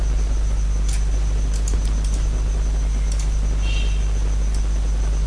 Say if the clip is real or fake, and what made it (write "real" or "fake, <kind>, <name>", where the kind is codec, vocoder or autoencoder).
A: real